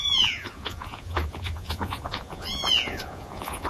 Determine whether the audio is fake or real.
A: fake